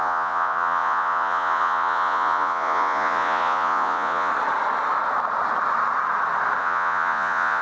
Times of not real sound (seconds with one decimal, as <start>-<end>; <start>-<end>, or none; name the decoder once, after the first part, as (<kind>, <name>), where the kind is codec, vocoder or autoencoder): 0.0-4.3 (vocoder, Vocos); 6.6-7.6